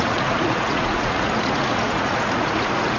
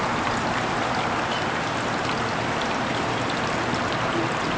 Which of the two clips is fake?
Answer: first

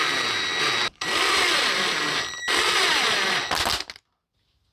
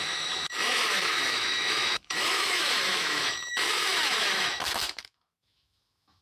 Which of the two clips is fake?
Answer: second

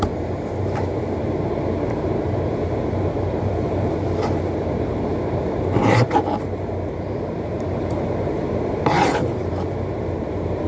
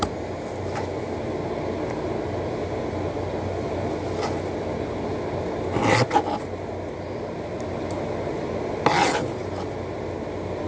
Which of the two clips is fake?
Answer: first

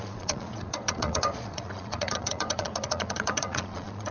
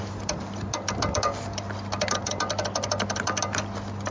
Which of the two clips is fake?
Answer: first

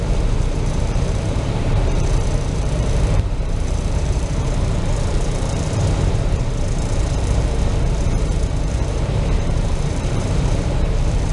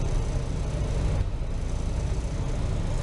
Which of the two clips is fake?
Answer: first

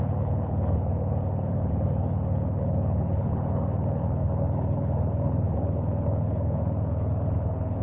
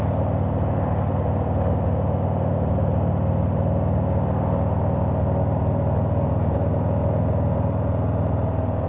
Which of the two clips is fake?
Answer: first